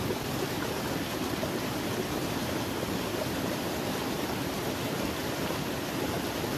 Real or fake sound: real